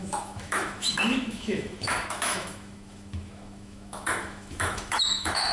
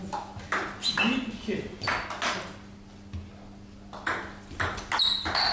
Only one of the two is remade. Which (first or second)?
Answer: first